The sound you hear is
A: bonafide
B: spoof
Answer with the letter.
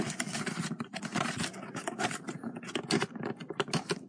A